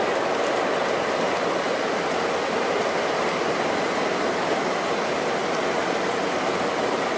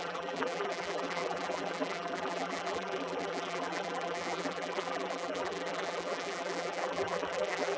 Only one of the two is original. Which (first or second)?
first